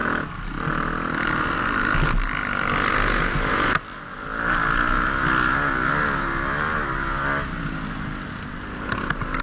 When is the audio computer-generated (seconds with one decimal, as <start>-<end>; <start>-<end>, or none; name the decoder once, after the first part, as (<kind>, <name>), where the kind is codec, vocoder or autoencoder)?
none